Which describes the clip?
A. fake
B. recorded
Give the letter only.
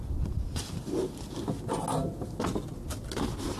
B